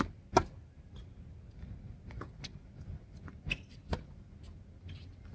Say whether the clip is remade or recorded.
recorded